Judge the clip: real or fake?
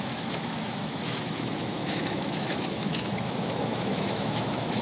fake